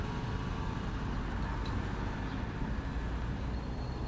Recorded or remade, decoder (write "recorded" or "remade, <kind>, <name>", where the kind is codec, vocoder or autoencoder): recorded